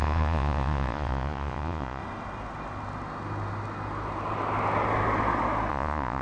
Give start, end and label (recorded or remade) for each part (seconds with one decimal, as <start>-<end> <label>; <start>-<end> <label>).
0.0-2.0 remade; 2.0-5.7 recorded; 5.7-6.2 remade